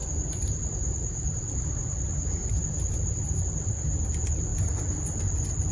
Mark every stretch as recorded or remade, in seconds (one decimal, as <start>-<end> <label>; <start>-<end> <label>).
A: 0.0-3.4 remade; 3.4-5.7 recorded